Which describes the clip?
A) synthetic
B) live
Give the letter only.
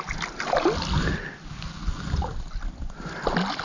B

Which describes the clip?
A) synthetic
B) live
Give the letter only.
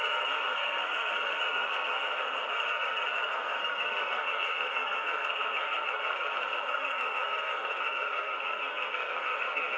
A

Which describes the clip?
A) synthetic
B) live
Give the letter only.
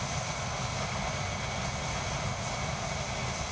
B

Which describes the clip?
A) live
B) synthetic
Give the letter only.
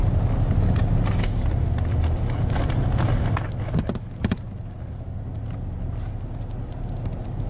A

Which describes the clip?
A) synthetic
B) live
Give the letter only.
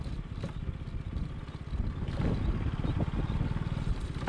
B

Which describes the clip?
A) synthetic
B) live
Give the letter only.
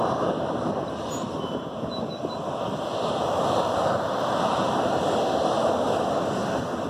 B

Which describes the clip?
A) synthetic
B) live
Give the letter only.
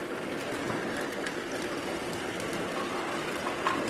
B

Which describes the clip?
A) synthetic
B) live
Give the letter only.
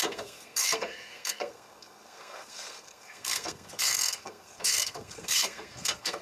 A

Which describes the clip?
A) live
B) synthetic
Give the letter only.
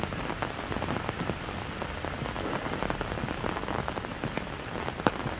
A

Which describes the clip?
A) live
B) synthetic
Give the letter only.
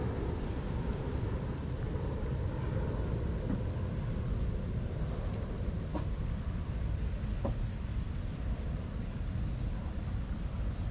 A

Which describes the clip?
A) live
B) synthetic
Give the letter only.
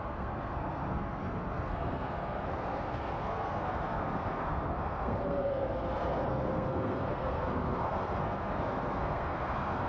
B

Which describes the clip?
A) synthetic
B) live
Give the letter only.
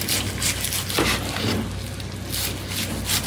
B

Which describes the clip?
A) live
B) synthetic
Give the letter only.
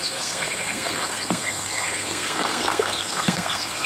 B